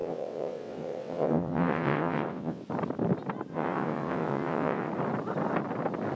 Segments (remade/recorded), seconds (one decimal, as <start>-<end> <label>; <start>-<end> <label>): 0.0-2.6 remade; 2.6-3.5 recorded; 3.5-4.9 remade; 4.9-6.2 recorded